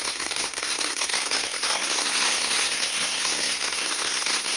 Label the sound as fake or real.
fake